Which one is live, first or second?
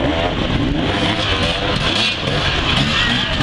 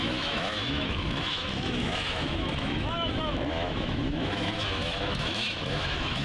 first